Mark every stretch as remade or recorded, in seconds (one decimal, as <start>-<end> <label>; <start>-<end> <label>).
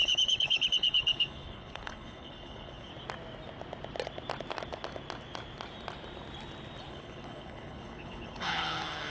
0.0-2.9 remade; 2.9-6.9 recorded; 6.9-9.1 remade